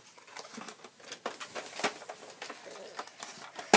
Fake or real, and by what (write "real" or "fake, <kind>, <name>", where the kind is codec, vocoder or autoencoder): real